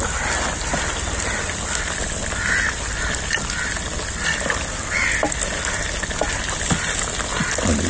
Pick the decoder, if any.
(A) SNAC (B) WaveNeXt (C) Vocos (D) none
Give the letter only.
D